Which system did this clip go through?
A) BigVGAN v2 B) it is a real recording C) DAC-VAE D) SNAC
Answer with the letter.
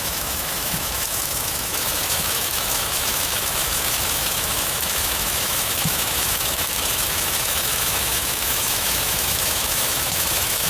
C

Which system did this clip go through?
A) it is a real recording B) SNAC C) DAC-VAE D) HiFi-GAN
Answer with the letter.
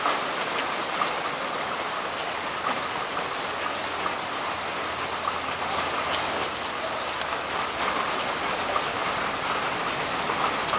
A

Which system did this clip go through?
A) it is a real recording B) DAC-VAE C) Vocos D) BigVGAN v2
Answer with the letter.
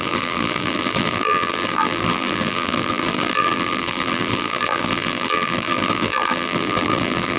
D